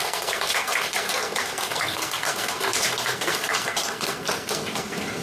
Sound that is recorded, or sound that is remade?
remade